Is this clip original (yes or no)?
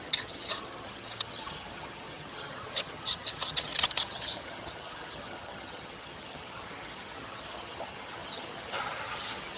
no